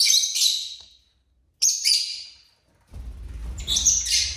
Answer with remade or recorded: recorded